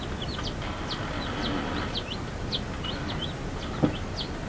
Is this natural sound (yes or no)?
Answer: yes